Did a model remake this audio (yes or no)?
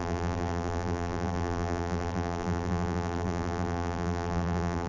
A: yes